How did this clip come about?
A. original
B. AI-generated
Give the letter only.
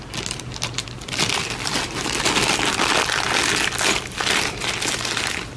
A